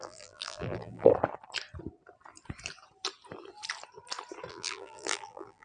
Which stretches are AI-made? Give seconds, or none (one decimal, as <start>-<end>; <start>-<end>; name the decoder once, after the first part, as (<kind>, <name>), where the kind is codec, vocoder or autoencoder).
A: 0.0-1.1 (vocoder, BigVGAN v2); 4.5-5.6